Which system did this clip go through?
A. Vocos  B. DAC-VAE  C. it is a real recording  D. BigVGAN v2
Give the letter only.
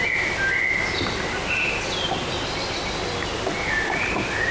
C